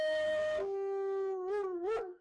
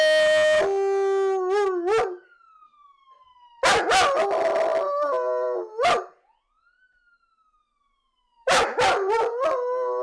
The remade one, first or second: first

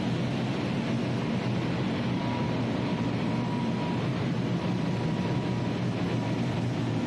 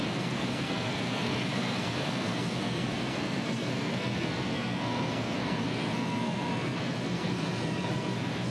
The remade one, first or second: second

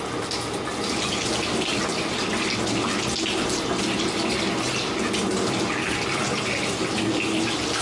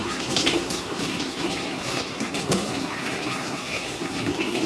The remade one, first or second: second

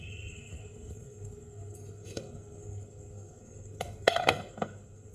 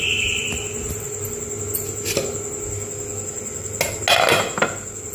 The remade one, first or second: first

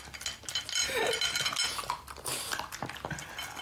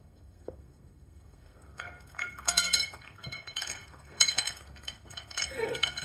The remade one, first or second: second